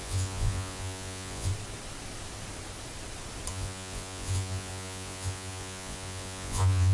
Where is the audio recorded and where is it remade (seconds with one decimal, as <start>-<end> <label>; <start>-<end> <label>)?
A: 0.0-1.5 remade; 1.5-3.5 recorded; 3.5-6.9 remade